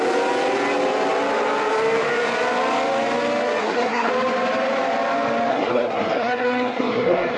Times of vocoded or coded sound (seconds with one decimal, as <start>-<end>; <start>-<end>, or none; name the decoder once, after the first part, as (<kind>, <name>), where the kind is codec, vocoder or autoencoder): 3.6-4.1 (codec, SNAC); 5.5-7.4